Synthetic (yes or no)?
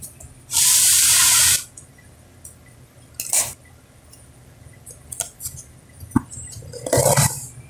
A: no